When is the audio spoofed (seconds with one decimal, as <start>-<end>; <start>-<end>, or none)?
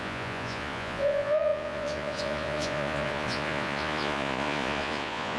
0.0-5.4